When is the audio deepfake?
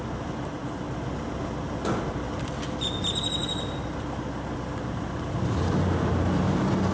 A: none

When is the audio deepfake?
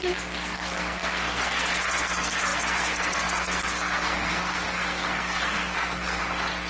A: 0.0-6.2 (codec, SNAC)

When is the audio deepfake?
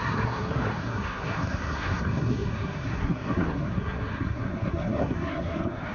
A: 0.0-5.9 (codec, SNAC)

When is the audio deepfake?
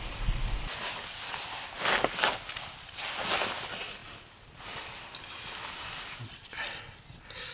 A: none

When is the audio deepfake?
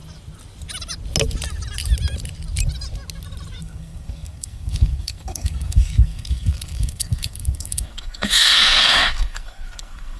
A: 3.6-10.2 (codec, SNAC)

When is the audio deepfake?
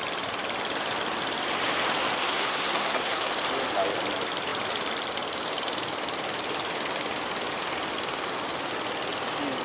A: 2.2-3.3 (codec, SNAC)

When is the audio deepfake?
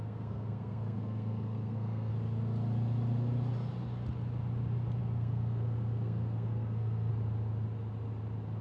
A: 0.0-2.1 (codec, SNAC); 5.0-7.1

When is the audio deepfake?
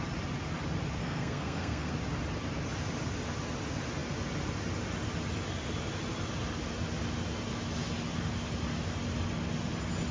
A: 1.0-1.9 (codec, SNAC)